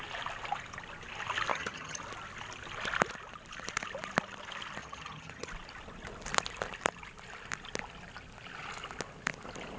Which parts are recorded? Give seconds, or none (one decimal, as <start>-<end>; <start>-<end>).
0.0-1.5; 2.0-4.8; 5.5-9.8